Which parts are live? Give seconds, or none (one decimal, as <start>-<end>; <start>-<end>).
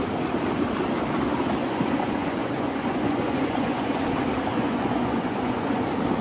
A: 0.0-1.6; 4.0-4.5; 5.8-6.2